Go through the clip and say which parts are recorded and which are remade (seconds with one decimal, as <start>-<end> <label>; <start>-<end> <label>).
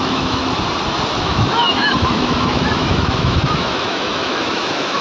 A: 0.0-0.4 remade; 0.4-1.2 recorded; 1.2-5.0 remade